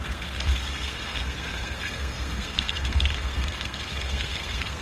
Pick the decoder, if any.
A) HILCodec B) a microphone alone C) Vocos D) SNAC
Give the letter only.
D